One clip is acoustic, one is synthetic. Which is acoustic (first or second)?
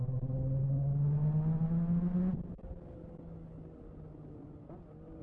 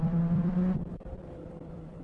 first